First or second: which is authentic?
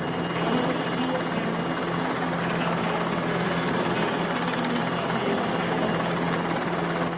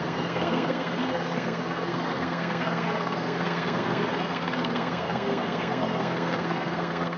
first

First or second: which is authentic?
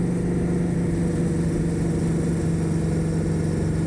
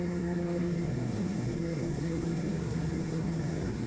first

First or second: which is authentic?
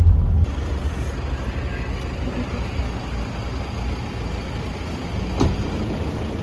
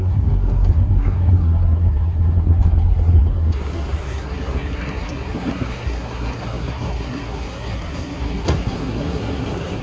first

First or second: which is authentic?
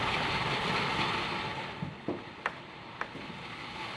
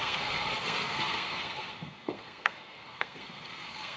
first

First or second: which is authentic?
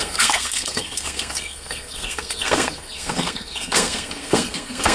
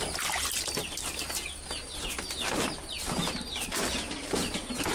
second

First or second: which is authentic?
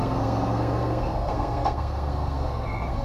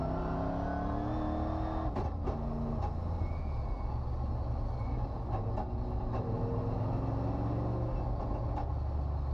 second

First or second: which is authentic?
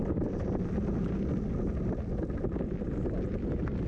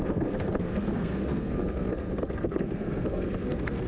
first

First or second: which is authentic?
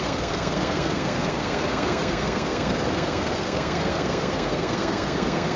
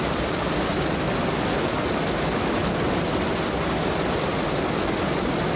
second